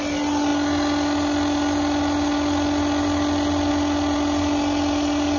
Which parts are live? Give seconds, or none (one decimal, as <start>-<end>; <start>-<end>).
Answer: 0.0-5.4